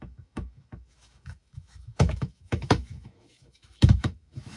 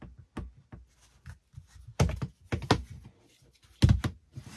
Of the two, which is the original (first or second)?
second